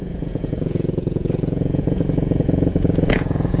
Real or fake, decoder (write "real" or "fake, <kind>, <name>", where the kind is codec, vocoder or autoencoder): fake, vocoder, Vocos